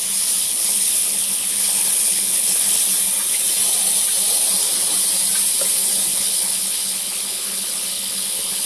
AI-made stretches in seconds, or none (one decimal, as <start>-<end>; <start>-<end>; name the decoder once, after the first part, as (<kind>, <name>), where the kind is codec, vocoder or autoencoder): 0.4-2.8 (codec, HILCodec); 6.1-8.7